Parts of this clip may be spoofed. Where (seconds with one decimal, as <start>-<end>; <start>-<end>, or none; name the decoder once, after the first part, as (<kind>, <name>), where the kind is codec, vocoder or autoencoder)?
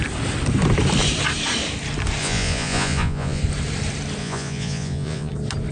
2.2-3.4 (vocoder, Vocos); 4.2-5.3